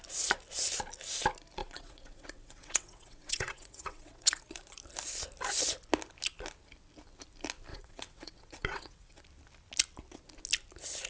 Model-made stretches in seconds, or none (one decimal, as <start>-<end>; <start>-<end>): 1.6-4.4; 7.7-9.2